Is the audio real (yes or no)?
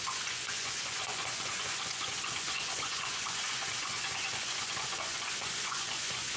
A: no